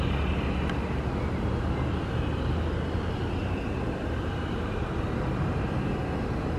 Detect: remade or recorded recorded